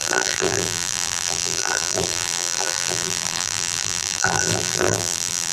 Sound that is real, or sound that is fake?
fake